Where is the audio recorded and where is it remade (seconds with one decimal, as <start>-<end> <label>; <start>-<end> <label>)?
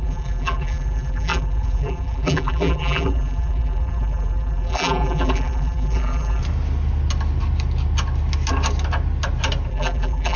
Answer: 0.0-6.4 remade; 6.4-9.7 recorded; 9.7-10.4 remade